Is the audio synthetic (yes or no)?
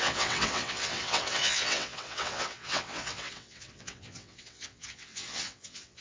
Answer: yes